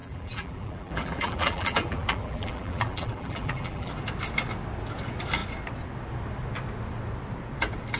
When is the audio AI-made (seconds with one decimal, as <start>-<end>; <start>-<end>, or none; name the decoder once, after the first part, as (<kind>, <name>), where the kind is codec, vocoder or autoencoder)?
0.0-3.9 (vocoder, BigVGAN v2)